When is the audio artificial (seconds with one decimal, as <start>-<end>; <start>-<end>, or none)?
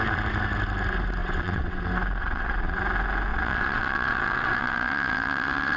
1.2-1.8; 2.2-2.8; 3.3-5.8